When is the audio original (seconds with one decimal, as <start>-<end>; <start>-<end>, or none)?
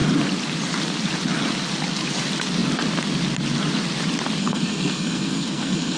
0.0-4.4